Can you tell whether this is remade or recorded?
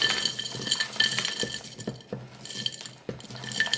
recorded